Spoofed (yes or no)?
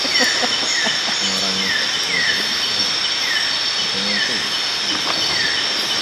no